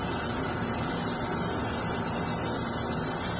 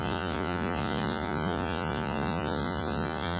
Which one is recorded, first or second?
first